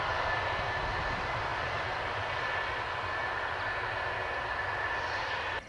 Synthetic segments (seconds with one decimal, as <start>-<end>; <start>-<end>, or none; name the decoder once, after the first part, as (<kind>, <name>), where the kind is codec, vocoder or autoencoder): none